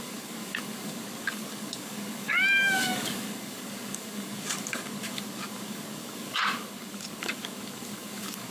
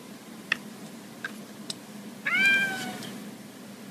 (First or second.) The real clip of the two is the second